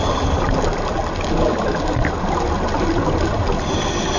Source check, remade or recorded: recorded